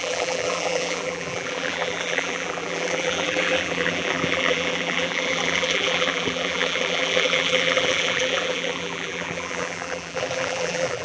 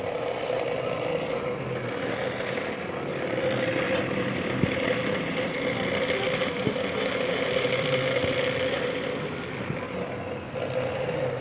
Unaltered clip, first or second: second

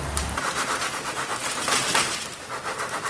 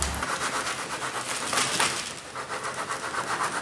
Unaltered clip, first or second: second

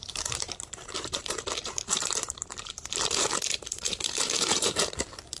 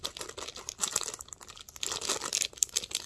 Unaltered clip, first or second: second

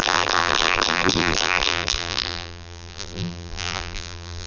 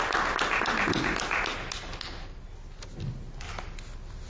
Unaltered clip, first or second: second